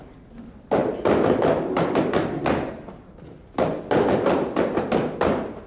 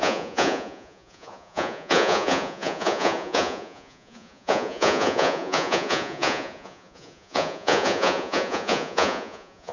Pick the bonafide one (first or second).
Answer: first